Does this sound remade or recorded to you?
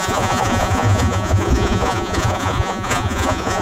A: remade